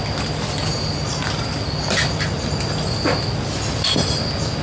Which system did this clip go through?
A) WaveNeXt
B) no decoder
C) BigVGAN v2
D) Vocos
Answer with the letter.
C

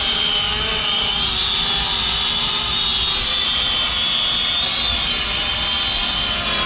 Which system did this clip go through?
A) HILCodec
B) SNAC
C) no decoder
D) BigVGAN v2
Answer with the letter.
C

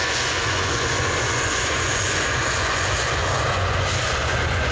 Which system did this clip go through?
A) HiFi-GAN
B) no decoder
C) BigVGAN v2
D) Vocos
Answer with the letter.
D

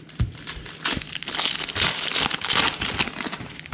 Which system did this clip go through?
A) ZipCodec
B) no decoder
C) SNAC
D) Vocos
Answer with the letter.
B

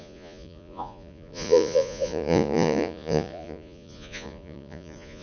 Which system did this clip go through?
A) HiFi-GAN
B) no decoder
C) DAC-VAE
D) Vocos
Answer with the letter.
D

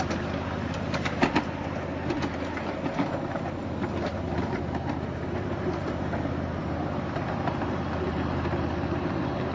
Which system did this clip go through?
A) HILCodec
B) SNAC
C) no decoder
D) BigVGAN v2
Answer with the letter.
C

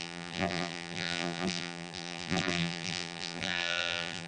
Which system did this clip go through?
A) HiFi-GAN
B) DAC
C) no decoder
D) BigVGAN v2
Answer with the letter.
D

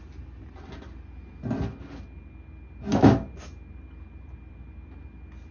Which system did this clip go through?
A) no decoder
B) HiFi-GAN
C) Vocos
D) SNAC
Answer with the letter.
A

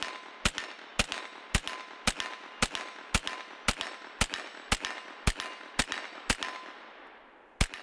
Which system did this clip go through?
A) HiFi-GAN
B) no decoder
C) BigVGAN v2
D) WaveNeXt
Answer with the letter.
B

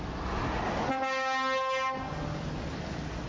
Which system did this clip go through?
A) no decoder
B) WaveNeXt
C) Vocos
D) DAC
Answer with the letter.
A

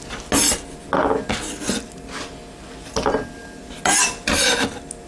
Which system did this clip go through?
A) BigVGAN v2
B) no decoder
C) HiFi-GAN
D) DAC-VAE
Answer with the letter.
B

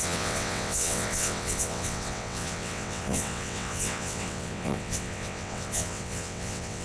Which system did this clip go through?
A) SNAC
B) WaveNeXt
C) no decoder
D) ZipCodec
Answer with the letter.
B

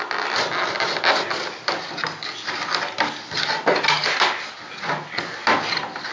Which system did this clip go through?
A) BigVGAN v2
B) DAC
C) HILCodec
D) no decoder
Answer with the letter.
D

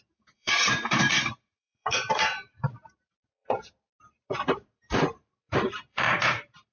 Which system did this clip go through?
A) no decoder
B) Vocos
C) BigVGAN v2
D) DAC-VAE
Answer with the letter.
C